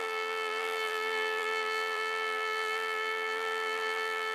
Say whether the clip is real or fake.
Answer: fake